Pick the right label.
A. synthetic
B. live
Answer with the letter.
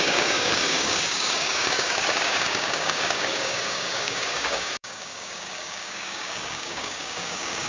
A